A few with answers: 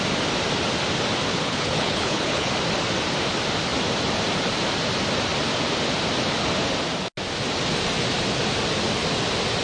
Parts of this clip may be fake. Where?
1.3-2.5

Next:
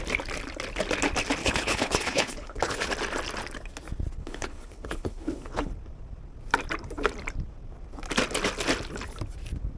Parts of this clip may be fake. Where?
1.4-2.9; 4.2-5.7

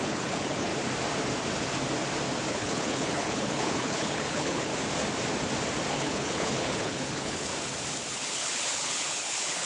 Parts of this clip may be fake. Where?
0.0-0.7; 2.5-4.7; 5.9-7.5; 8.1-9.7

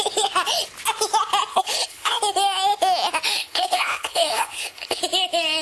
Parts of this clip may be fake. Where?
1.5-2.2; 3.4-5.0

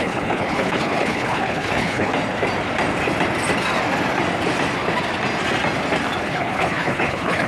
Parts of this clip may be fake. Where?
0.0-2.1; 6.2-7.5

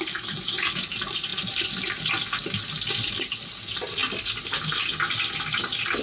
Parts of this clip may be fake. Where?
none

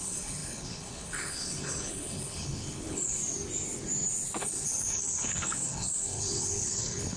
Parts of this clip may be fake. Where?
0.0-3.2; 4.4-7.2